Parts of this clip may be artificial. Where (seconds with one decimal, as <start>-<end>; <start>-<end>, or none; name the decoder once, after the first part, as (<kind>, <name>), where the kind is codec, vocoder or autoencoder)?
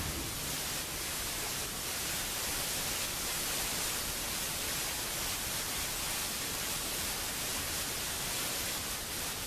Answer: 3.7-5.7 (vocoder, BigVGAN v2); 6.2-7.6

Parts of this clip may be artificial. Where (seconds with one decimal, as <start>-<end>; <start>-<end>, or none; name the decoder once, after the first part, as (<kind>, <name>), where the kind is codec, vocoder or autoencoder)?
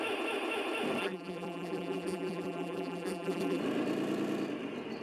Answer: 1.0-3.6 (vocoder, BigVGAN v2)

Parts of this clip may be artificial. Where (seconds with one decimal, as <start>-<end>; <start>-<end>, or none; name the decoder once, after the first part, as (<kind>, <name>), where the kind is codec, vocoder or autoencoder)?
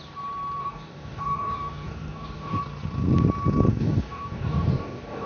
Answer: 0.6-2.6 (codec, DAC); 3.7-5.3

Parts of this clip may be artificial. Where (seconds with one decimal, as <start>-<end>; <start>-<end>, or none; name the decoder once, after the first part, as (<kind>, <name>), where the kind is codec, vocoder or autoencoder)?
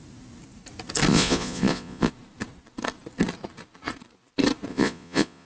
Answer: 1.1-2.1 (vocoder, Vocos); 4.7-5.5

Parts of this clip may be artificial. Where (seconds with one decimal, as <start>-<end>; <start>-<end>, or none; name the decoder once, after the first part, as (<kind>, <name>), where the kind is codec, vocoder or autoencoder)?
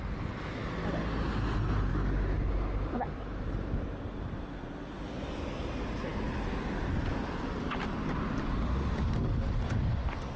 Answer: none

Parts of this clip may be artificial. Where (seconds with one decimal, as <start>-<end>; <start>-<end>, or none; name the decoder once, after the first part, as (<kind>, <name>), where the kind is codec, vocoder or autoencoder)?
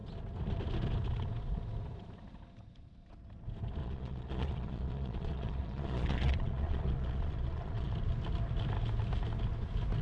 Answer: 3.8-7.9 (vocoder, Vocos)